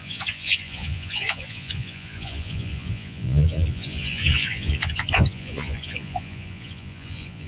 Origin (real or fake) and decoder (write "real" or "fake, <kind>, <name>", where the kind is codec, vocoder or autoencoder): fake, vocoder, Vocos